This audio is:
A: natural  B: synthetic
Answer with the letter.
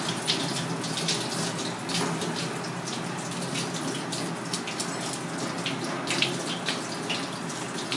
A